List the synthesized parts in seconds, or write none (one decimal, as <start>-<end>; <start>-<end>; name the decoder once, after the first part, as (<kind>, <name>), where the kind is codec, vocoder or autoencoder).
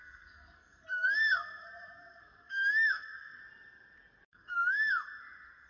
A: 0.0-3.4 (codec, SNAC); 4.3-4.9